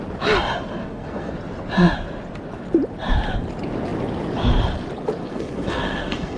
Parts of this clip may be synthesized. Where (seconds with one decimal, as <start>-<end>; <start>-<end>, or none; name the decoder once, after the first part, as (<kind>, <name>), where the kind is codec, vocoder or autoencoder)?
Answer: 0.8-1.3 (codec, SNAC); 5.2-6.4